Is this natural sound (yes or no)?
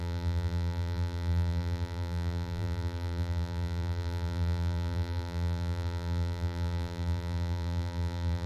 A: no